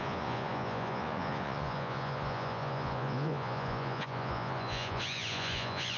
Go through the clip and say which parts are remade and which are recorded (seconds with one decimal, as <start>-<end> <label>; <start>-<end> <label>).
0.0-6.0 remade